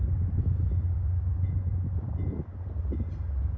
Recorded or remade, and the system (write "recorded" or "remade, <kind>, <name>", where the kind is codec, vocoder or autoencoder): recorded